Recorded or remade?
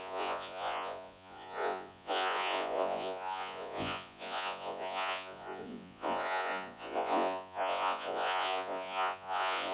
remade